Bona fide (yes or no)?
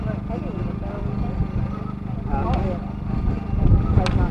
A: yes